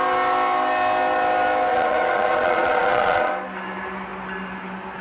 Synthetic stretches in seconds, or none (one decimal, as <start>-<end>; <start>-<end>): 1.7-3.3